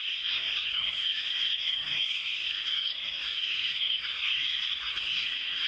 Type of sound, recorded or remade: remade